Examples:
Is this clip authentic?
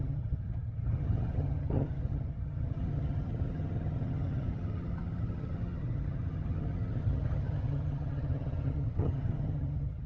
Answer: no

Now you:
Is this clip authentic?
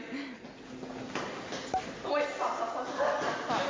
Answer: yes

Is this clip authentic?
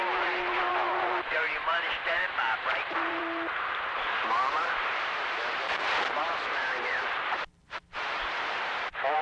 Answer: no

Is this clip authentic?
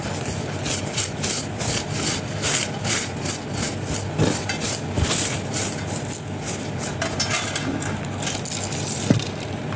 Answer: yes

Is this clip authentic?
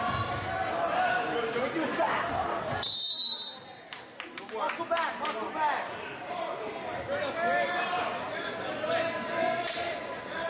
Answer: yes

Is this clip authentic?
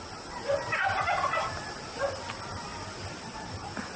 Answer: yes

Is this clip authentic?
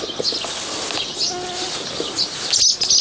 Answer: yes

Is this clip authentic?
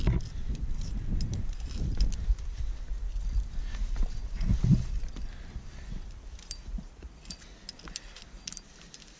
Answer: yes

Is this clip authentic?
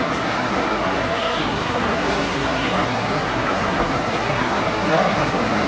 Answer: no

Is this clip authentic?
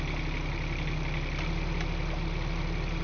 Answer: yes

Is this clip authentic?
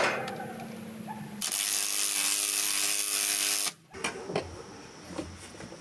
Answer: yes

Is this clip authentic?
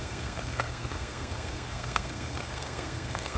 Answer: no